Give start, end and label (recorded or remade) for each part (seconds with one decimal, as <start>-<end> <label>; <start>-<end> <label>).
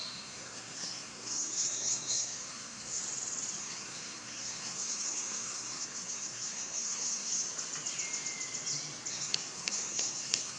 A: 0.0-3.0 remade; 3.0-3.6 recorded; 3.6-7.3 remade; 7.3-9.1 recorded; 9.1-10.6 remade